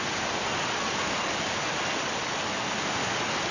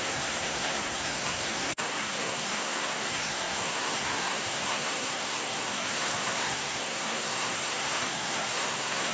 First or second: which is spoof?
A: second